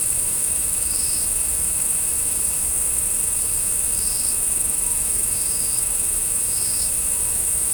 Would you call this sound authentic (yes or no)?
no